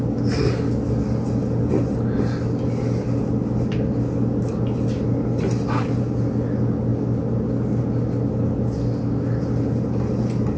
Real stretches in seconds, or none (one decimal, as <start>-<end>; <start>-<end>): 0.0-10.6